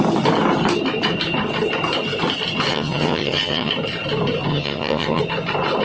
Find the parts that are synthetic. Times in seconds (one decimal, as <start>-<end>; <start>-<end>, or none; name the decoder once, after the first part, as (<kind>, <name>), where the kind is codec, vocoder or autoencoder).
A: 2.7-3.7 (vocoder, HiFi-GAN); 4.5-5.2